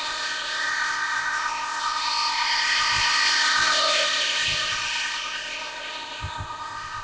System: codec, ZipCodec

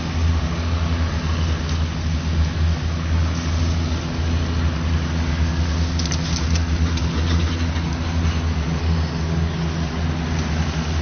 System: none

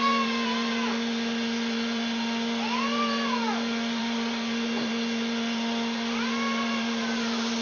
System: vocoder, BigVGAN v2